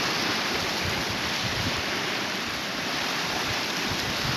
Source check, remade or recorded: remade